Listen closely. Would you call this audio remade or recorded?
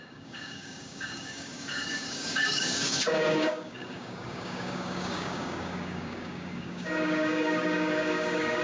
remade